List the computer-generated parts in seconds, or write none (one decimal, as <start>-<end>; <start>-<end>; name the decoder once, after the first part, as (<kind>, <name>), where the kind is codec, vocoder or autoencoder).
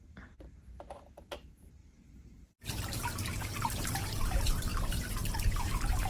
0.0-6.1 (vocoder, BigVGAN v2)